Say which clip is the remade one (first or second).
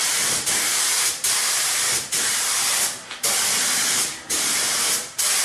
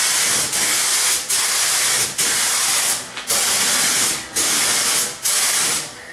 first